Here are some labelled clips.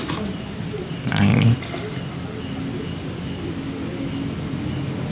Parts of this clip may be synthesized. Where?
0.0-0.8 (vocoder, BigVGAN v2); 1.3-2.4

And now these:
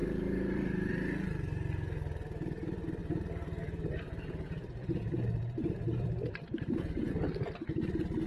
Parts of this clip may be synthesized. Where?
0.0-0.9 (vocoder, BigVGAN v2); 3.0-7.1